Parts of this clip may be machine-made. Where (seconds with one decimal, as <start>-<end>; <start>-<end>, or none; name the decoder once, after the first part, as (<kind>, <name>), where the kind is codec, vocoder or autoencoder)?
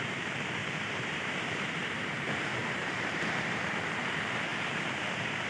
0.6-1.9 (vocoder, BigVGAN v2); 2.6-3.8